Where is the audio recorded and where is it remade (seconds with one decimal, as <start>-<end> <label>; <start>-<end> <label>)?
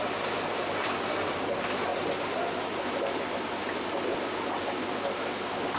0.0-5.8 recorded